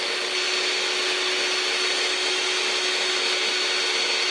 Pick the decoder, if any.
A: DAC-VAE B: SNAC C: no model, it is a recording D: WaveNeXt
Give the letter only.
C